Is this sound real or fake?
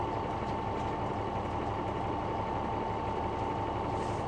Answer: real